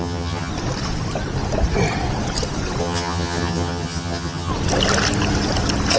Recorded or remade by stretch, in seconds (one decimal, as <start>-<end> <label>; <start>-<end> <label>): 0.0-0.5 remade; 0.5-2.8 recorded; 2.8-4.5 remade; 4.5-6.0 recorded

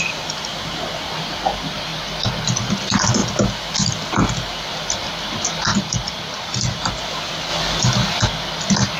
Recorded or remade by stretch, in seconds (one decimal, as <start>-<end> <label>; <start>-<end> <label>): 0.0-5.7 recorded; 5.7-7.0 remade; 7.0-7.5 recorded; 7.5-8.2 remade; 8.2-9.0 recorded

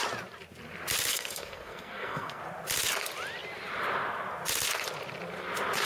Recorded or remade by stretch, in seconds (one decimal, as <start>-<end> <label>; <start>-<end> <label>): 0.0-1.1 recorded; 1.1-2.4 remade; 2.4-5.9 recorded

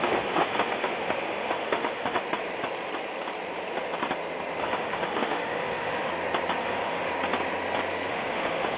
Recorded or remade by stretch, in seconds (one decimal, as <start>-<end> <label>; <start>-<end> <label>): 0.0-2.2 remade; 2.2-4.6 recorded; 4.6-6.1 remade; 6.1-6.6 recorded; 6.6-7.1 remade; 7.1-8.1 recorded; 8.1-8.8 remade

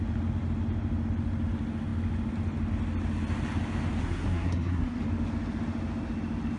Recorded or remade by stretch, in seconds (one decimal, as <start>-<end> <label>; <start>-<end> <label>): 0.0-4.0 recorded; 4.0-5.0 remade; 5.0-6.6 recorded

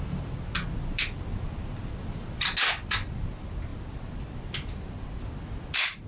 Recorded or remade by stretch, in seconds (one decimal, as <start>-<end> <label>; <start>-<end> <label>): 0.0-6.1 recorded

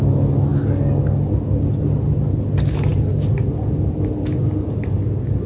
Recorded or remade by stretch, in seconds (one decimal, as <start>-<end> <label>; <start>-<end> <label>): 0.0-5.5 recorded